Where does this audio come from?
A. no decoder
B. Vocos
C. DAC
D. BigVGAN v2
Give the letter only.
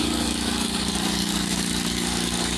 C